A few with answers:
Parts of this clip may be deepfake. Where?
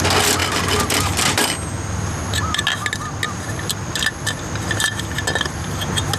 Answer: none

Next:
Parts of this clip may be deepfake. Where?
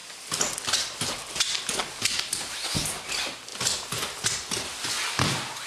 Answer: 1.8-3.1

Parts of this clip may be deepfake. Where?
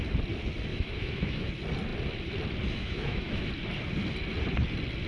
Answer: 0.7-1.5; 2.8-3.5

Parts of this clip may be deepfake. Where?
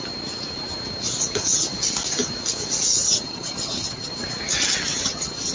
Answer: 3.0-4.1; 5.0-5.5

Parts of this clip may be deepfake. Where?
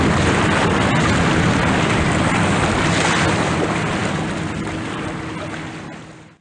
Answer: none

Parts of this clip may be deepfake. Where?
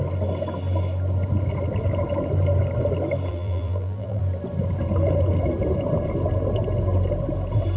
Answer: 3.3-4.2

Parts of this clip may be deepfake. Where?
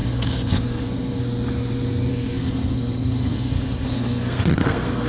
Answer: 0.0-1.2; 2.1-5.1